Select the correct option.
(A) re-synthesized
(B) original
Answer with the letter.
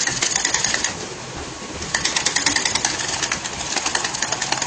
B